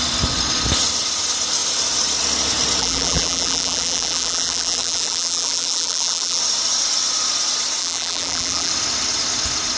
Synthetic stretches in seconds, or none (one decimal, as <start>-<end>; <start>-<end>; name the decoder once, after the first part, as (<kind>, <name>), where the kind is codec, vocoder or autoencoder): 2.8-6.4 (vocoder, BigVGAN v2); 7.8-8.7